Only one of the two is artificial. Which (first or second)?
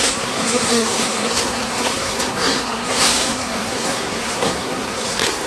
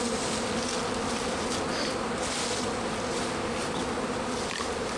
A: first